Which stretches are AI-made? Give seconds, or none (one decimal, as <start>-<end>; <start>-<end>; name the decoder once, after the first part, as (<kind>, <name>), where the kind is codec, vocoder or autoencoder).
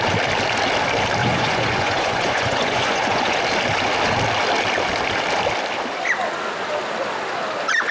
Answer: 1.2-3.4 (vocoder, Vocos)